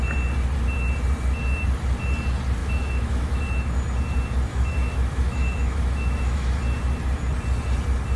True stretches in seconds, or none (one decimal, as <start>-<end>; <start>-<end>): 0.0-2.6; 3.4-4.5; 6.6-8.2